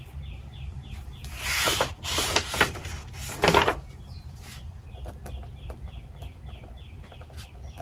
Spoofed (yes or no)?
yes